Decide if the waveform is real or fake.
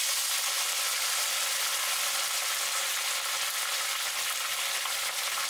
real